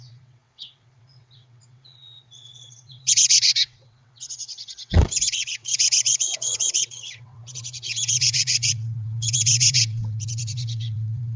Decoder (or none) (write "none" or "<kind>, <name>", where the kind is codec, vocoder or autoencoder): vocoder, WaveNeXt